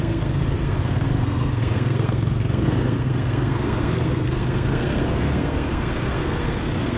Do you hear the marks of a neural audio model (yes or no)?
yes